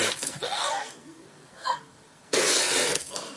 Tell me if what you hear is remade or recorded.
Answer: remade